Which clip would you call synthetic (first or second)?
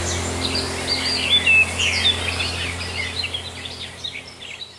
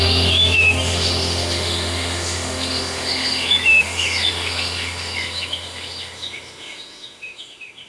second